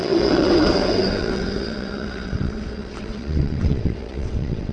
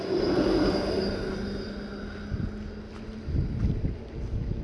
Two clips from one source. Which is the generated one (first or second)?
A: first